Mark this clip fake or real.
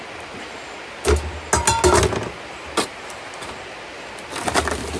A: real